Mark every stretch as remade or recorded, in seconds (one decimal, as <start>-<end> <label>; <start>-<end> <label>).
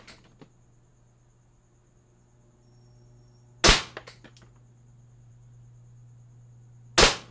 0.0-7.3 recorded